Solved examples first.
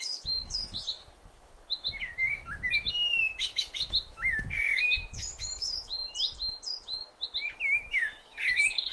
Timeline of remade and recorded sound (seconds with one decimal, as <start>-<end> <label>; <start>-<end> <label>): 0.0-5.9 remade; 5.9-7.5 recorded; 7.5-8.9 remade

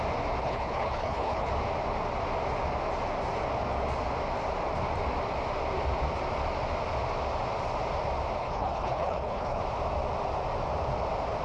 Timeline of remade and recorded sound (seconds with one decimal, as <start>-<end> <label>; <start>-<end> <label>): 0.0-0.4 recorded; 0.4-1.5 remade; 1.5-8.4 recorded; 8.4-9.6 remade; 9.6-11.4 recorded

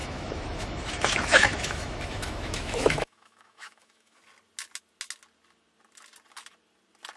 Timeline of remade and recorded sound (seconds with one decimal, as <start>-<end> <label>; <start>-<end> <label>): 0.0-4.2 remade; 4.2-7.2 recorded

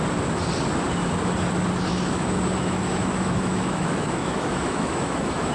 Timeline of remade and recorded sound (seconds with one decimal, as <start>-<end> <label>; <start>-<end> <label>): 0.0-1.9 recorded; 1.9-5.5 remade